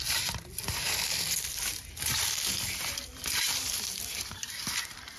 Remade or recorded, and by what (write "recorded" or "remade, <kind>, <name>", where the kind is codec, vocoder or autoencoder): remade, vocoder, BigVGAN v2